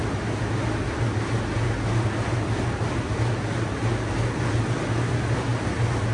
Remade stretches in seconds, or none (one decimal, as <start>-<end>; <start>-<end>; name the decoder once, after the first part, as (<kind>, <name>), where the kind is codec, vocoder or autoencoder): none